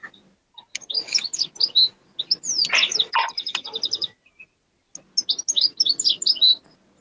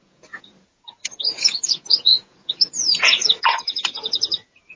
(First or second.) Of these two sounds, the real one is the first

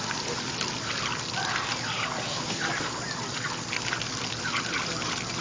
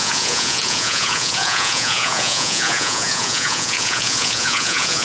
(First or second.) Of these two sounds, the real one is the first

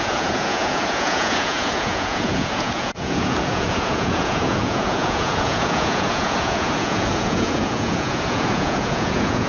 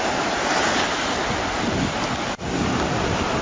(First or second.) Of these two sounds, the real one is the second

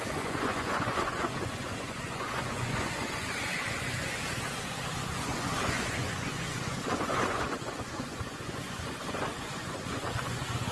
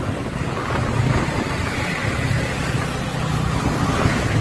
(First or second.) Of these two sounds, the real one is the second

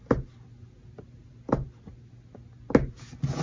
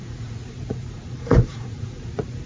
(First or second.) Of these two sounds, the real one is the first